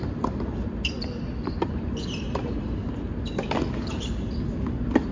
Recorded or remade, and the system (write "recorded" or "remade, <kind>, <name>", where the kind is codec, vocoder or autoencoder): recorded